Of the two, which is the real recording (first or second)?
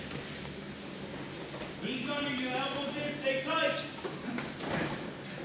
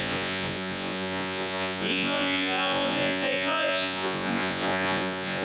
first